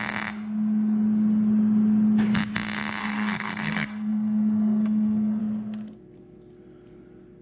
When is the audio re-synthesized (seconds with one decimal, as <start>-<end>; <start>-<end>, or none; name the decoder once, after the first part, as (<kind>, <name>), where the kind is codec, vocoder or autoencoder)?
3.0-5.4 (codec, SNAC)